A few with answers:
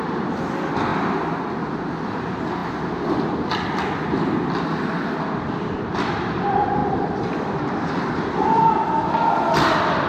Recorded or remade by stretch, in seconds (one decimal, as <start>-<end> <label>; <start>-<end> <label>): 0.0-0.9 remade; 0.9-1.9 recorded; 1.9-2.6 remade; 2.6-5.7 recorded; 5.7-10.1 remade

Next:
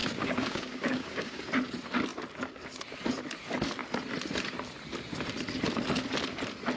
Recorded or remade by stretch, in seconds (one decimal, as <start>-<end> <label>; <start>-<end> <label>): 0.0-1.5 remade; 1.5-6.8 recorded

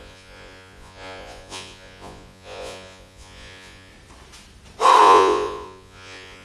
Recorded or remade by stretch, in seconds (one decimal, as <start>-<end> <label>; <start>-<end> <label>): 0.0-3.9 remade; 3.9-5.0 recorded; 5.0-6.4 remade

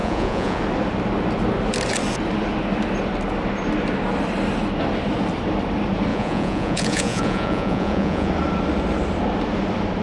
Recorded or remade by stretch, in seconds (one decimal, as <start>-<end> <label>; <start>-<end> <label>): 0.0-0.6 remade; 0.6-6.1 recorded; 6.1-8.3 remade; 8.3-10.0 recorded